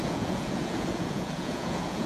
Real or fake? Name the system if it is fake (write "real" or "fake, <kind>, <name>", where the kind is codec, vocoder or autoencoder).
fake, vocoder, Vocos